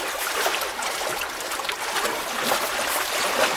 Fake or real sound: real